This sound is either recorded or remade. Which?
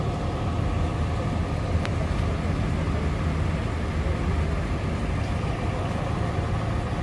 recorded